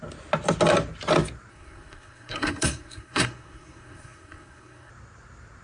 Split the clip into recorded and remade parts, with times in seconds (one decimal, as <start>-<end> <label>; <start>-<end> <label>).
0.0-1.5 recorded; 1.5-4.9 remade; 4.9-5.6 recorded